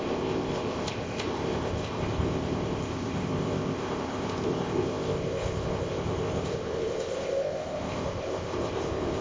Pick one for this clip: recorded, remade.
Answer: remade